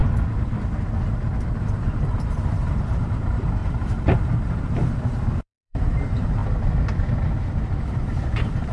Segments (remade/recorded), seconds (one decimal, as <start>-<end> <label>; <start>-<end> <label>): 0.0-1.6 recorded; 1.6-6.4 remade; 6.4-7.8 recorded; 7.8-8.7 remade